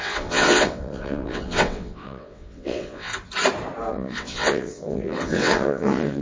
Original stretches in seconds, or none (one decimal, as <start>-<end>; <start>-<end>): 3.1-3.9